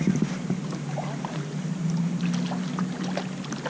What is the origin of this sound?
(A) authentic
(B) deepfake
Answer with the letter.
A